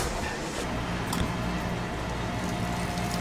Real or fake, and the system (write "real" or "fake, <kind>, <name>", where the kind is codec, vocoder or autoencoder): real